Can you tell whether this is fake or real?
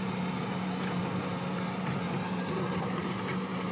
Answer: real